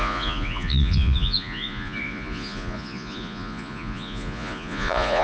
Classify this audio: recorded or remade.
remade